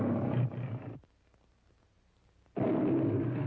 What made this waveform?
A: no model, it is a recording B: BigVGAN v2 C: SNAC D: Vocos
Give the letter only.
A